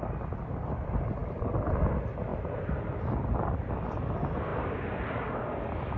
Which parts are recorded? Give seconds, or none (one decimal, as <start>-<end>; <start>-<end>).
0.0-6.0